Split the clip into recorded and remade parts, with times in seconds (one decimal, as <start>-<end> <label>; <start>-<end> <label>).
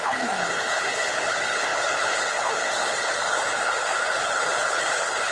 0.0-5.3 remade